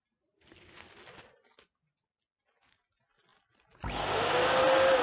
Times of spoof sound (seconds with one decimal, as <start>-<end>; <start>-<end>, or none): none